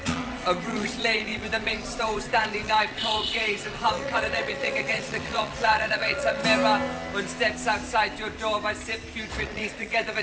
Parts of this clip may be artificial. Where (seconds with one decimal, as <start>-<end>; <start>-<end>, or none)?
0.0-6.4; 9.3-10.2